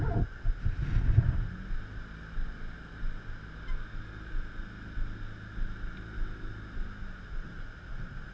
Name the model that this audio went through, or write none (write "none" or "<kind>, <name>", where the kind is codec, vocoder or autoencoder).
none